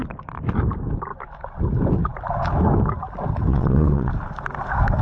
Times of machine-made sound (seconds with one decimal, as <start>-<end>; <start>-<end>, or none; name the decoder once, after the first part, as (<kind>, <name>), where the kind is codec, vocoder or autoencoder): 3.5-4.1 (vocoder, WaveNeXt)